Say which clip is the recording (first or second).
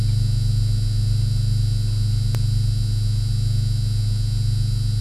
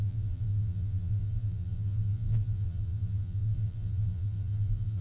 first